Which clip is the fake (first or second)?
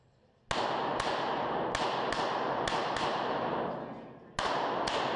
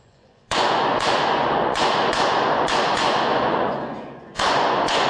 second